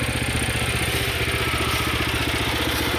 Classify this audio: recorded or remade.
recorded